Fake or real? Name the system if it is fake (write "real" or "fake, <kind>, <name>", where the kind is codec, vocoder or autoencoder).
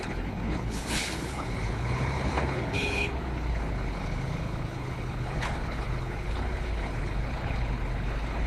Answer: fake, codec, HILCodec